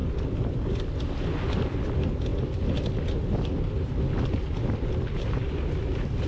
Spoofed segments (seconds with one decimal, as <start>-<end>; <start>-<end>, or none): none